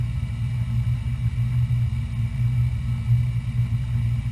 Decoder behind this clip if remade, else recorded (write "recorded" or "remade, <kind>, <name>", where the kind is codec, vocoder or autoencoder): recorded